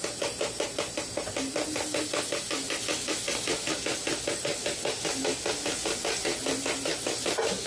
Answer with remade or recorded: recorded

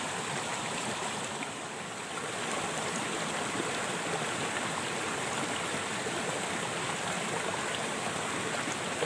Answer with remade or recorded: recorded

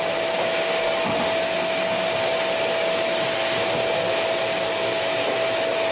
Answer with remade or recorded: recorded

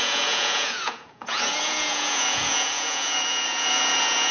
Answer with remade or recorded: remade